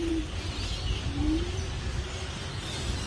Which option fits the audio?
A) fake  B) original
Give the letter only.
B